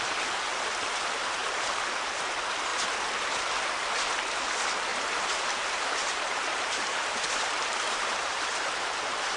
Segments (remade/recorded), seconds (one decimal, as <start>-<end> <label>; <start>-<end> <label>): 0.0-1.4 recorded; 1.4-2.2 remade; 2.2-4.9 recorded; 4.9-9.4 remade